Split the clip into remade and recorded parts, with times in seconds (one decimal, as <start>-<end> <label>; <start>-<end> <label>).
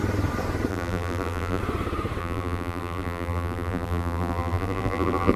0.0-0.7 recorded; 0.7-1.6 remade; 1.6-2.2 recorded; 2.2-5.4 remade